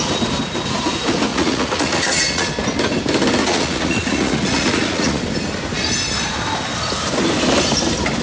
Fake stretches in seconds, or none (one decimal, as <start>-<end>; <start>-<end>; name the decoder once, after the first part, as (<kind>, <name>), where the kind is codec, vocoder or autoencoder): 1.3-2.5 (vocoder, Vocos); 3.4-5.2